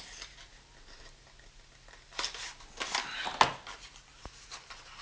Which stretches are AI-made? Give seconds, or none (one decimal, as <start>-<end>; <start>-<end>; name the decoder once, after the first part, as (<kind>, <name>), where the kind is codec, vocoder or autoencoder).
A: none